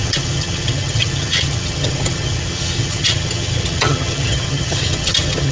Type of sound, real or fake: fake